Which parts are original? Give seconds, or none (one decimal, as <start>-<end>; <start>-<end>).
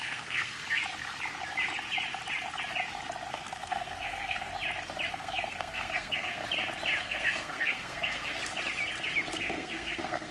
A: 0.8-3.3; 4.5-5.1; 6.4-7.0; 8.4-9.3